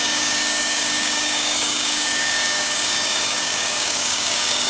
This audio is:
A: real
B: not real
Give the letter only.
B